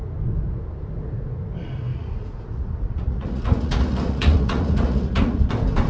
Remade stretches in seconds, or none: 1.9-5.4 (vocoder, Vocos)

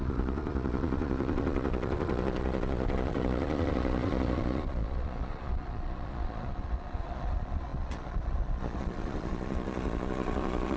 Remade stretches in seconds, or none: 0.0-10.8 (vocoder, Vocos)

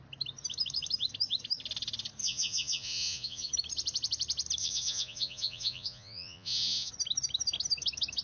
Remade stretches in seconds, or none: 2.2-3.5 (vocoder, Vocos); 4.6-6.9

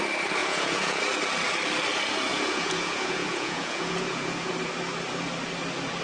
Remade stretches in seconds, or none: 0.4-1.0 (vocoder, Vocos); 2.3-4.5